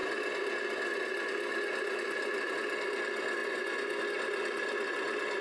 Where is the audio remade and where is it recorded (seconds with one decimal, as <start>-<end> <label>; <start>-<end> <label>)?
0.0-3.4 recorded; 3.4-4.0 remade; 4.0-5.4 recorded